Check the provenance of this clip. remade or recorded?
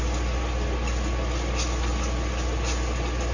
recorded